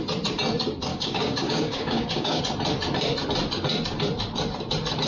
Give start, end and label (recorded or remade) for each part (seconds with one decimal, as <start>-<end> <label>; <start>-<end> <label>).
0.0-0.9 recorded; 0.9-2.4 remade; 2.4-5.1 recorded